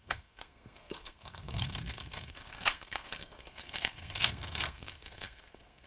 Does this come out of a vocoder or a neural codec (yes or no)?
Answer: yes